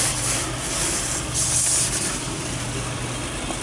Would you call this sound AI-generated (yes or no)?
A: no